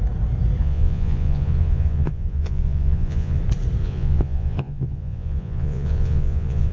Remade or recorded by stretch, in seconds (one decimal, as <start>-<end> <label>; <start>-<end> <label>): 0.0-0.6 recorded; 0.6-3.4 remade; 3.4-3.8 recorded; 3.8-6.7 remade